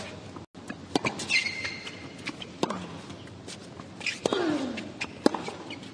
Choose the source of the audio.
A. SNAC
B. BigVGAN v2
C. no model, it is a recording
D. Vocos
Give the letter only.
C